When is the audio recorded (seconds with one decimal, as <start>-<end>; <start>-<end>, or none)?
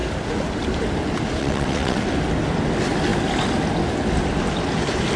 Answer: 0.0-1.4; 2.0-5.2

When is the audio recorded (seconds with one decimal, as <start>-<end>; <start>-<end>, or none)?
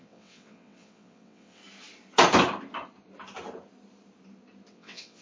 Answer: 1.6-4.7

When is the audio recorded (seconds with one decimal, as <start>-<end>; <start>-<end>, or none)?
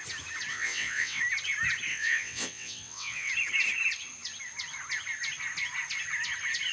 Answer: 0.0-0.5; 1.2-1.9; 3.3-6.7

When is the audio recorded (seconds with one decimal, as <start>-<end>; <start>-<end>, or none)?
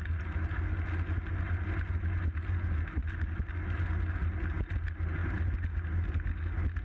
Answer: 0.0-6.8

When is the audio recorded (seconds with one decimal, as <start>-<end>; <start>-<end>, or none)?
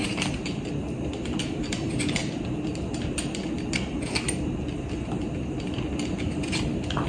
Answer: 0.0-7.1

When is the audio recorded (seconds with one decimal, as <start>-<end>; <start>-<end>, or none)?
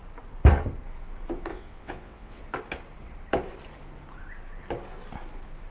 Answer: 0.0-1.5; 2.4-5.7